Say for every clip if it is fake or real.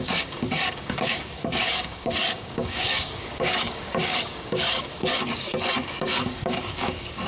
fake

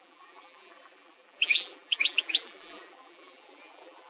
fake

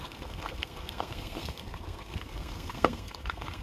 fake